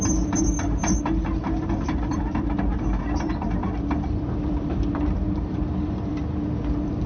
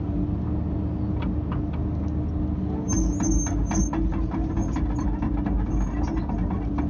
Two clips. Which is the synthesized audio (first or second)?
first